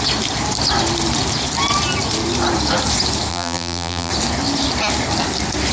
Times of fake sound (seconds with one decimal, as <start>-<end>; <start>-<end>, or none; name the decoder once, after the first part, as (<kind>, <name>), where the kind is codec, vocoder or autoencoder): 3.3-4.1 (vocoder, BigVGAN v2)